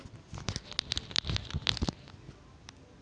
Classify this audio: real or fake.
real